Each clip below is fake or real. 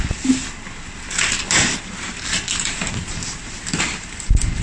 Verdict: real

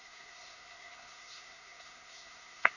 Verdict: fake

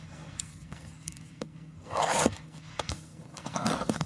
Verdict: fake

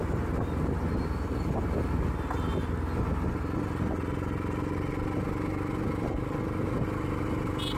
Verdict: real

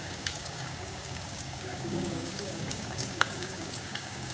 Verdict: fake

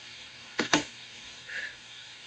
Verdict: fake